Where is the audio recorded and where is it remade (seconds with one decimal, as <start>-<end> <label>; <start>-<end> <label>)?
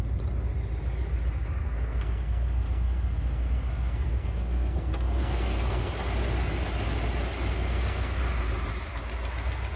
0.0-1.6 recorded; 1.6-5.9 remade; 5.9-7.5 recorded; 7.5-8.2 remade; 8.2-9.8 recorded